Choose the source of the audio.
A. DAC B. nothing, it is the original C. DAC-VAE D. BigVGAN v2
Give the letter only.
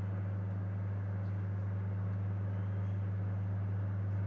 B